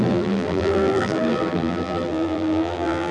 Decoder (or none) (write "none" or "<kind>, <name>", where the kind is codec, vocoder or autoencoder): vocoder, BigVGAN v2